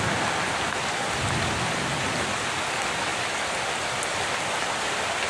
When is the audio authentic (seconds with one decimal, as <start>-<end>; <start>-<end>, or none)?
0.0-5.3